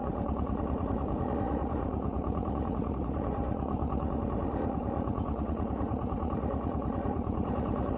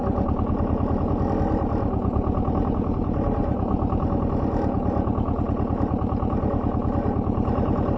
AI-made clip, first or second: first